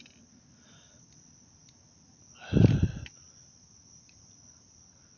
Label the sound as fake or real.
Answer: real